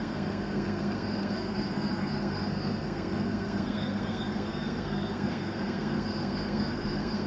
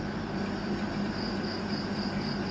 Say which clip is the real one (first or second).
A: second